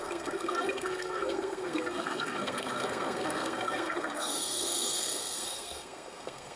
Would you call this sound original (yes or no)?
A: no